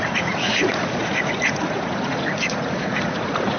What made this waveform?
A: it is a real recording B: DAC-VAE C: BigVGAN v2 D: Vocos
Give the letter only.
D